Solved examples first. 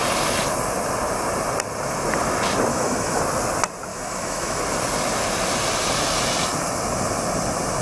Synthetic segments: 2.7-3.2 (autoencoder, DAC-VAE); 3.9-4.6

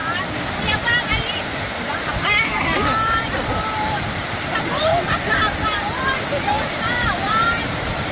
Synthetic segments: 1.4-4.9 (vocoder, BigVGAN v2); 6.3-8.1

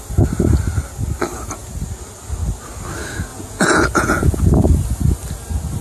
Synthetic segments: 3.3-4.4 (vocoder, Vocos)

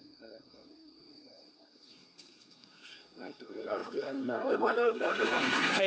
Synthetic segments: 0.0-5.9 (codec, SNAC)

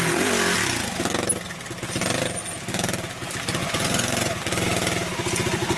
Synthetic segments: 3.6-4.4 (vocoder, Vocos)

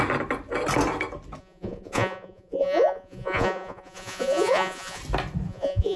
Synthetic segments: 1.4-5.0 (vocoder, Vocos); 5.5-6.0